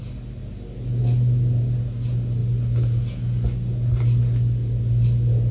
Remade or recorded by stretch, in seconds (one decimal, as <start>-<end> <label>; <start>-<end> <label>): 0.0-5.5 recorded